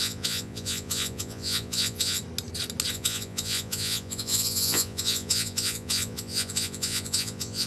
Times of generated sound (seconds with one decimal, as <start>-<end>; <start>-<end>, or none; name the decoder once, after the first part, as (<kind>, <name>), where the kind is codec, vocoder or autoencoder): 0.0-2.2 (vocoder, Vocos); 2.9-7.7